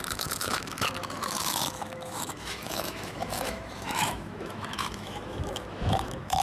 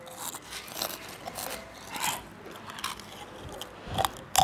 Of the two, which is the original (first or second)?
second